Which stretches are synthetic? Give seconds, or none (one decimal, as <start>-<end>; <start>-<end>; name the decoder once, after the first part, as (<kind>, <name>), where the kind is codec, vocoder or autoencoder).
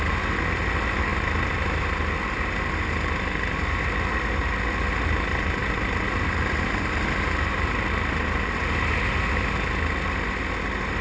none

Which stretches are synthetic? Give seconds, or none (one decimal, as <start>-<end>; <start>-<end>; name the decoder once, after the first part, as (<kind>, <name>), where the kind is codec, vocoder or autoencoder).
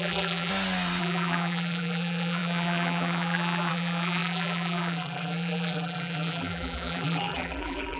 0.0-0.5 (vocoder, BigVGAN v2); 1.0-8.0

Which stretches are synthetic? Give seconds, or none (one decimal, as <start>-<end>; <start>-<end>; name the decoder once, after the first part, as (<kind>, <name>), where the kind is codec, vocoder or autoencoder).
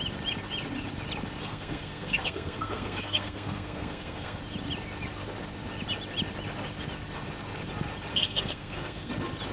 1.4-4.4 (codec, SNAC); 8.1-9.1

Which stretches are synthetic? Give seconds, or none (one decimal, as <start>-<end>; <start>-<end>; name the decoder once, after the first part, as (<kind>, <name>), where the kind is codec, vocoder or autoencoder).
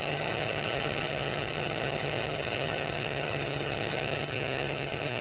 0.0-5.2 (vocoder, HiFi-GAN)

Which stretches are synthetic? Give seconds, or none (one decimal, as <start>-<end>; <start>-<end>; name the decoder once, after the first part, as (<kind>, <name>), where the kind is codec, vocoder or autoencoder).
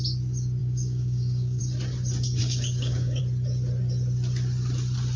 0.6-1.6 (codec, DAC); 2.4-3.2